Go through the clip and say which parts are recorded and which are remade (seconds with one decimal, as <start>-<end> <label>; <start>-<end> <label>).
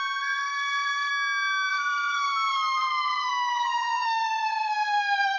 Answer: 0.0-1.1 remade; 1.1-1.7 recorded; 1.7-5.4 remade